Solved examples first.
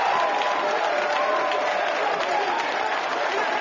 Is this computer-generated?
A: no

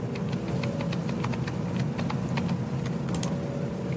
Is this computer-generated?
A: no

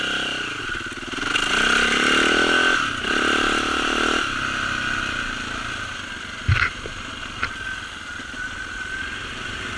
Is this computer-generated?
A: no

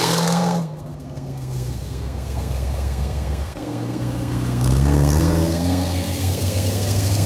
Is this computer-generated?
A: yes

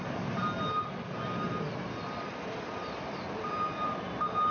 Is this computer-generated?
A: no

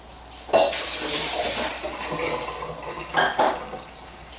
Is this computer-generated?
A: no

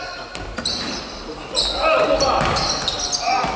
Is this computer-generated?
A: no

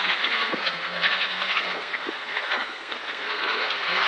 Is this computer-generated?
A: yes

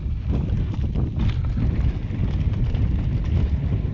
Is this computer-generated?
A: no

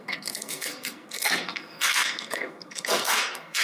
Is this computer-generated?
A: yes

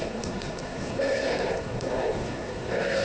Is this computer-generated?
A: yes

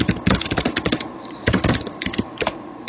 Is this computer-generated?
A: yes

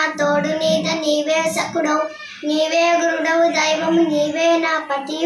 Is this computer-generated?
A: no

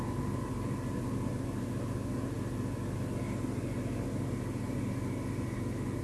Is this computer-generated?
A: no